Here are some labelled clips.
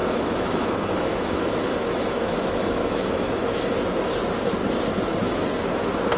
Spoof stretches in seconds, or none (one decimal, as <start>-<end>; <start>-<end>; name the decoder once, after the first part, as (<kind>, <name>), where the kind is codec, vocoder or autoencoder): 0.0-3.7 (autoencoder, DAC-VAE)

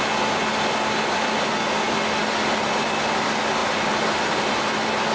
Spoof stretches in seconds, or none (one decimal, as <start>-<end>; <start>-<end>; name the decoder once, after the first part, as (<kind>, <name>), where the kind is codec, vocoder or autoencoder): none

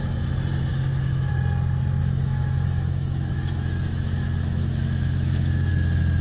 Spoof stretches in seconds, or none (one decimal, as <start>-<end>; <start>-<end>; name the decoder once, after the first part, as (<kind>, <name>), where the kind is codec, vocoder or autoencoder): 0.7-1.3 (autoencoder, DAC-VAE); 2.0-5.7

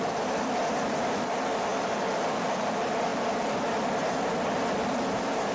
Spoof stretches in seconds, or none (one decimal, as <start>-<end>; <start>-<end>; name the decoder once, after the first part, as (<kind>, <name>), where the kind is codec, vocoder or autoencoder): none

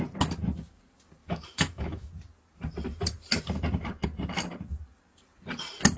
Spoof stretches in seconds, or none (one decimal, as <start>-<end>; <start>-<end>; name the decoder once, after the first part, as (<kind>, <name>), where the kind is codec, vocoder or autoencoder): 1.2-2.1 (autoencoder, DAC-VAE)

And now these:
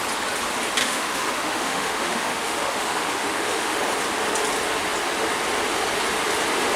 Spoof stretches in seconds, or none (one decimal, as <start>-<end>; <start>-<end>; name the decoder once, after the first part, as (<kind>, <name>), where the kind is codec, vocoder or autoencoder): 0.8-3.8 (autoencoder, DAC-VAE)

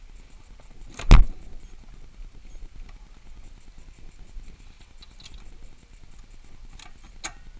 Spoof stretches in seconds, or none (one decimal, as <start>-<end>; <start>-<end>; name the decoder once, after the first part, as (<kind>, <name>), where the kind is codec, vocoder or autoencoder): none